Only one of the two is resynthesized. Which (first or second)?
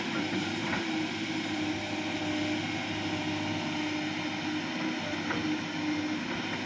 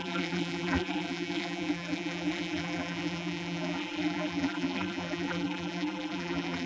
second